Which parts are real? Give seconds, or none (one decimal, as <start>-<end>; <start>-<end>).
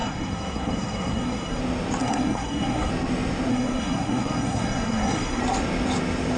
1.6-2.0; 2.9-3.5; 5.4-6.4